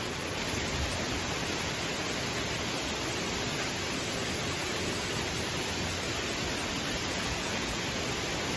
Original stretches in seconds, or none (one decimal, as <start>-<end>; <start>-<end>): 0.0-7.1; 7.8-8.6